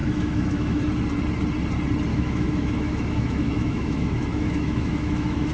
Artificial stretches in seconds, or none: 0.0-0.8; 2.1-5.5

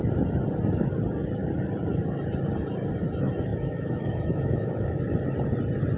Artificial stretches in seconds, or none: 3.5-5.0

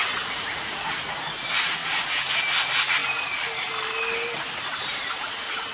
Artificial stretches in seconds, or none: 0.0-0.7

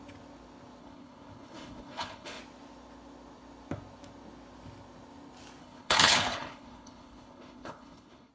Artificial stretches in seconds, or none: 0.8-2.4; 5.6-8.3

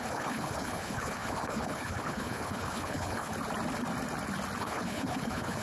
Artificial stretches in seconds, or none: 0.0-3.3; 4.6-5.6

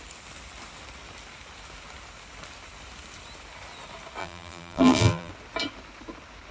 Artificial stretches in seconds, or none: 4.2-5.3

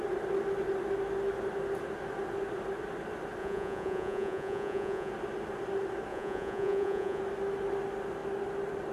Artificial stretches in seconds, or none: 3.4-5.1; 6.1-7.2

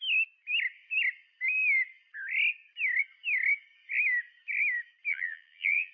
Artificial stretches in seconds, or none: 5.1-5.9